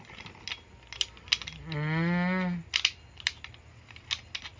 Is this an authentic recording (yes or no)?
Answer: yes